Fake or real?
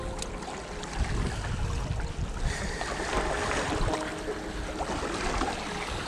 real